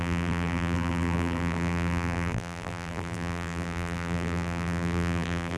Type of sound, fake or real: fake